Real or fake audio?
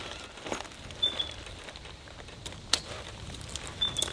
real